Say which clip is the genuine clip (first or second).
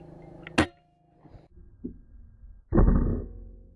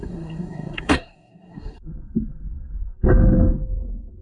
first